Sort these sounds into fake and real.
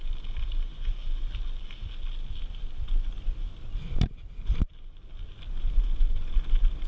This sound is real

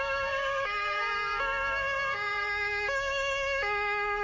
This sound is fake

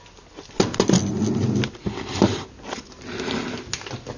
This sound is real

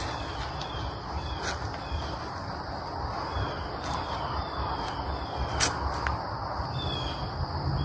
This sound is real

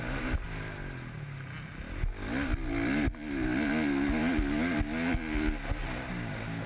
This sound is real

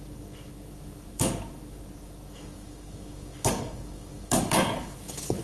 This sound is fake